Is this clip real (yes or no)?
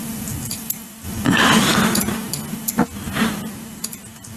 yes